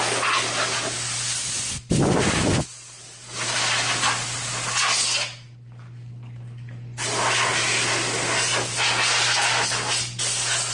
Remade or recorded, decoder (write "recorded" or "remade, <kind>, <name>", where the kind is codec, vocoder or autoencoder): recorded